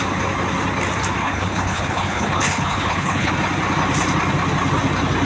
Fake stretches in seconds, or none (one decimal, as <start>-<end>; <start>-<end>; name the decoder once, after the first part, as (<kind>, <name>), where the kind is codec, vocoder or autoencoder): 1.2-3.3 (codec, HILCodec)